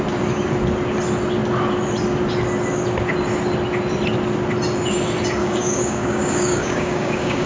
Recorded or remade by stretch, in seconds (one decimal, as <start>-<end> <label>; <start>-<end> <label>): 0.0-5.4 recorded; 5.4-7.5 remade